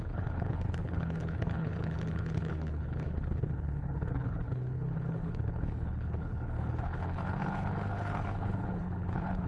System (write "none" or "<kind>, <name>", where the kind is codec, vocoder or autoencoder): codec, HILCodec